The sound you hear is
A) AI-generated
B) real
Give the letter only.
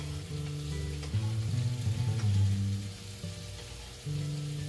B